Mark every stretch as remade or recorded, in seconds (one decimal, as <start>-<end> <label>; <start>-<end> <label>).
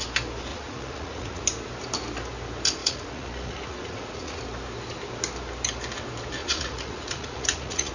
0.0-0.5 recorded; 0.5-1.4 remade; 1.4-2.8 recorded; 2.8-4.4 remade; 4.4-6.4 recorded; 6.4-7.9 remade